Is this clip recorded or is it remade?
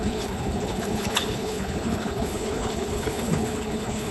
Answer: remade